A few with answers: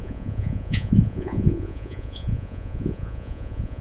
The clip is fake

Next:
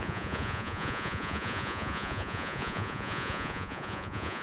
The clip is fake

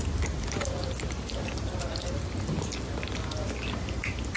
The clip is real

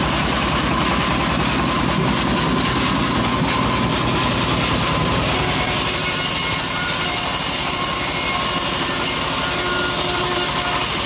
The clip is real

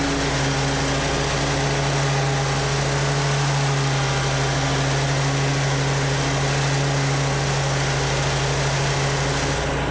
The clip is real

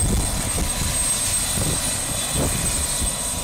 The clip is real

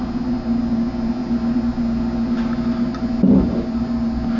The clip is real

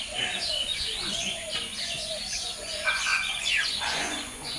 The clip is fake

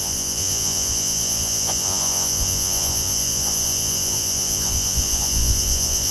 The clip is fake